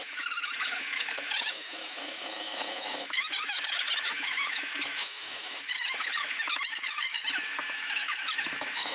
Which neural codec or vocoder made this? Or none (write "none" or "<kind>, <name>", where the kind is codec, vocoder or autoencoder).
autoencoder, DAC-VAE